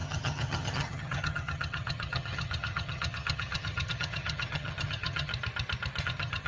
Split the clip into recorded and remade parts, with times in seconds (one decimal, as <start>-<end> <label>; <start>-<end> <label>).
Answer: 0.0-5.3 remade; 5.3-6.0 recorded; 6.0-6.5 remade